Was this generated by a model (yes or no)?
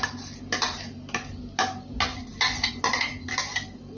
no